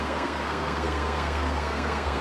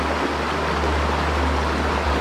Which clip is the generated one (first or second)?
first